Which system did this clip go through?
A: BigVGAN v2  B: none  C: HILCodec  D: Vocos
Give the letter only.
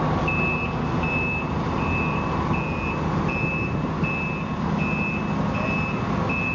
B